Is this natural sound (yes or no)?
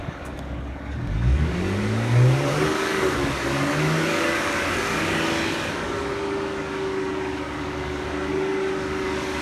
no